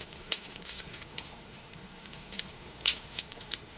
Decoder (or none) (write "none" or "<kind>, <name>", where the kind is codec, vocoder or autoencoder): codec, SNAC